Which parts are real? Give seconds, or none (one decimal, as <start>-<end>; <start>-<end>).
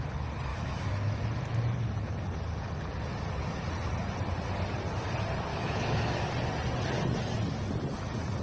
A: 0.0-0.5; 1.2-5.5; 6.2-8.4